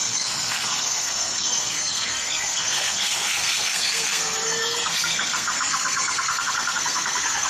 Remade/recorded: remade